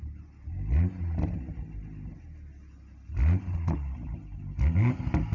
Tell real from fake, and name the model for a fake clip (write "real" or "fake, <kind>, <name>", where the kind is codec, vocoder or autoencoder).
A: real